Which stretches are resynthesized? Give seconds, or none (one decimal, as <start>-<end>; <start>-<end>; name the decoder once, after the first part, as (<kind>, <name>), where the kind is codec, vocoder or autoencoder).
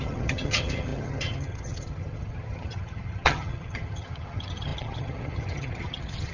0.0-6.3 (vocoder, HiFi-GAN)